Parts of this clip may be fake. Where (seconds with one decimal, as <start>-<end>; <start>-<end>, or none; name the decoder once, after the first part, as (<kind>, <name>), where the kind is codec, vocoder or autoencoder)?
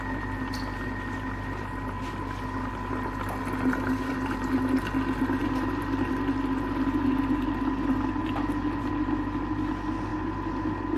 5.4-6.1 (vocoder, BigVGAN v2); 10.1-11.0